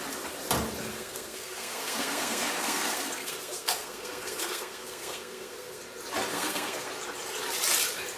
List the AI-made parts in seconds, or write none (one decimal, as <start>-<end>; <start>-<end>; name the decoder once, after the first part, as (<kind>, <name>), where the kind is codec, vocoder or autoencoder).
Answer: 0.9-5.8 (codec, SNAC); 6.3-6.9